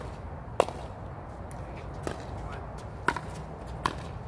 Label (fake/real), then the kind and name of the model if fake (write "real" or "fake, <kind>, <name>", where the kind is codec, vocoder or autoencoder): real